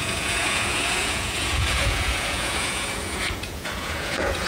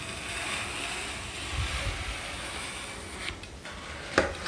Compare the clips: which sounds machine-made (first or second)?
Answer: first